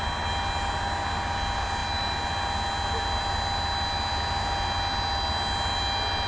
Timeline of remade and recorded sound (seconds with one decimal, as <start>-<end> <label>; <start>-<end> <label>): 0.0-6.3 recorded